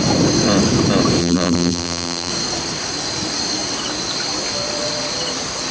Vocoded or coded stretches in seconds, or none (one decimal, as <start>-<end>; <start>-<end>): 1.2-2.3